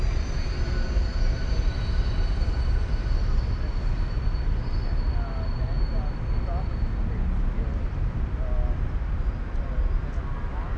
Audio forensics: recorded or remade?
recorded